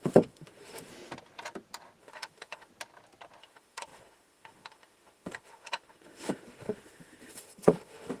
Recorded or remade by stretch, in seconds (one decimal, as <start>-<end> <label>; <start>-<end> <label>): 0.0-0.9 remade; 0.9-2.0 recorded; 2.0-2.7 remade; 2.7-3.4 recorded; 3.4-8.2 remade